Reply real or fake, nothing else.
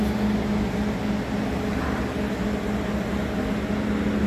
real